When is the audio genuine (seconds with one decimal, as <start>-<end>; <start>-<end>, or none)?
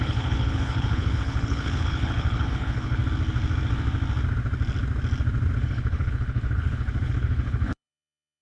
3.0-5.6